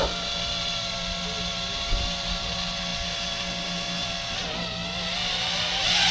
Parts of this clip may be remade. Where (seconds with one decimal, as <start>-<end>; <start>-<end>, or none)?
none